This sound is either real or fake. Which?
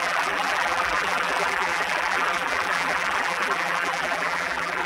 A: fake